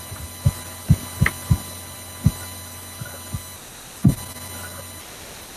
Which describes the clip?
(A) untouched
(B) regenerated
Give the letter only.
A